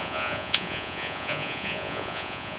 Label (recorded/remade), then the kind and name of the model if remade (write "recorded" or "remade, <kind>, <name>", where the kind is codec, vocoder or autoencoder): remade, vocoder, Vocos